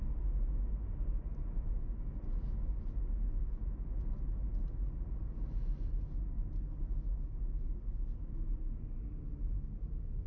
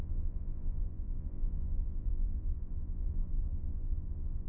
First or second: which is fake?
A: second